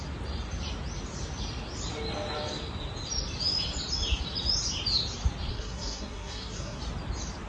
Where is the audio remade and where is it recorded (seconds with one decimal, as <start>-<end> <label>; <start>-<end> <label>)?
0.0-5.5 recorded; 5.5-6.8 remade; 6.8-7.5 recorded